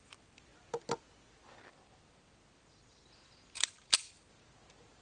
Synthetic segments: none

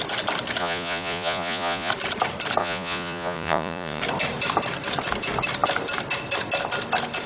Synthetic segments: 0.6-1.9 (vocoder, Vocos); 2.6-4.0

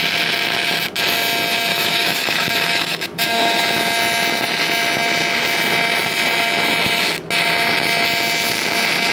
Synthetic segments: 1.7-3.6 (autoencoder, DAC-VAE)

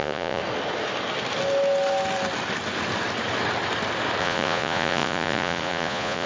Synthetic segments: 0.0-0.4 (vocoder, Vocos); 4.2-6.3